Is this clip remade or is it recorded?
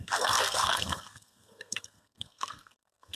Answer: remade